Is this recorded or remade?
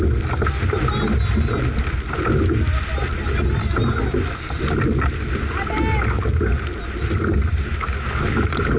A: recorded